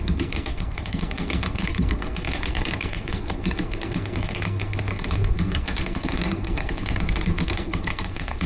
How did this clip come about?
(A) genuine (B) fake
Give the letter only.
B